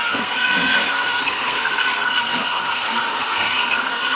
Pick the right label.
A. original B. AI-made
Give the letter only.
B